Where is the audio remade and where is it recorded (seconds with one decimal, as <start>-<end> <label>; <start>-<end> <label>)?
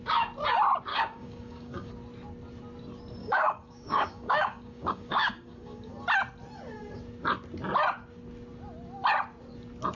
0.0-0.9 recorded; 0.9-1.9 remade; 1.9-3.2 recorded; 3.2-5.9 remade; 5.9-10.0 recorded